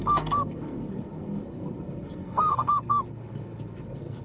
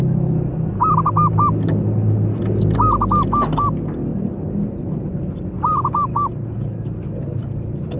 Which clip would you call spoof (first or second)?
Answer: first